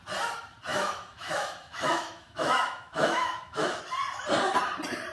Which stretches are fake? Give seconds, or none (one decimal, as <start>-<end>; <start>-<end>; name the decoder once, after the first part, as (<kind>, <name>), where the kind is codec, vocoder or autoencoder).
0.7-3.8 (autoencoder, DAC-VAE)